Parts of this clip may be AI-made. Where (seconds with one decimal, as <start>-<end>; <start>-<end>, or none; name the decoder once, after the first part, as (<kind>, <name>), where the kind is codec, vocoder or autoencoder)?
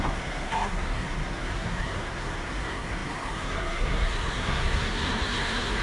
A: 0.0-5.8 (codec, SNAC)